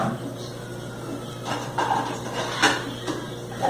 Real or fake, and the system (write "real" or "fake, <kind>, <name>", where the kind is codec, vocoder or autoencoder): real